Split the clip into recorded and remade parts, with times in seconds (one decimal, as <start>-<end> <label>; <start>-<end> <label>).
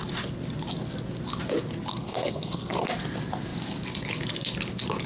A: 0.0-1.9 recorded; 1.9-2.9 remade; 2.9-5.1 recorded